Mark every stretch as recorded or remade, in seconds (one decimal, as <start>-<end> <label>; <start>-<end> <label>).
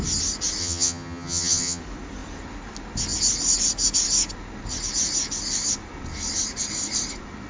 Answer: 0.0-0.6 recorded; 0.6-1.8 remade; 1.8-7.5 recorded